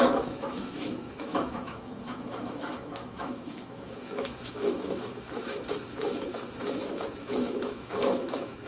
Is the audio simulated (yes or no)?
yes